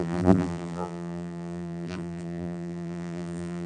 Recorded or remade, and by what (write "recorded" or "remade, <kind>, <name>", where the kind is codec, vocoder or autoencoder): remade, vocoder, BigVGAN v2